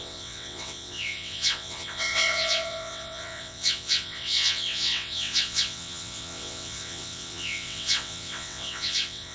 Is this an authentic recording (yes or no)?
no